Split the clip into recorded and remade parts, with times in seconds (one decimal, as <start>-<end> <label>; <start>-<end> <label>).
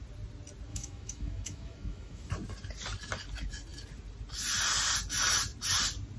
0.0-0.7 recorded; 0.7-2.3 remade; 2.3-6.2 recorded